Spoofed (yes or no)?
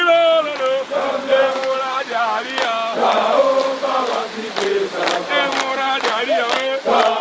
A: no